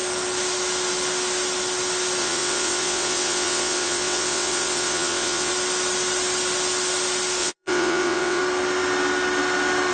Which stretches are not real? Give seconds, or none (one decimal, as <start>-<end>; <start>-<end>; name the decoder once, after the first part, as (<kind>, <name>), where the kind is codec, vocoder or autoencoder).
2.2-5.5 (vocoder, WaveNeXt); 7.4-8.4